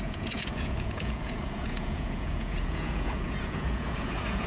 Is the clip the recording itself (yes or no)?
no